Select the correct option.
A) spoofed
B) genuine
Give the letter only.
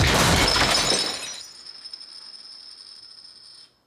B